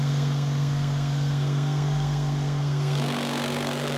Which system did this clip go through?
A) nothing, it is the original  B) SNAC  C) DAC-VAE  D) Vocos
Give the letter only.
B